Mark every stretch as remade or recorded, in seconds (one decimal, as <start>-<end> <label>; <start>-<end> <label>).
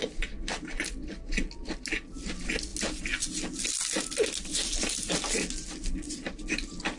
0.0-7.0 recorded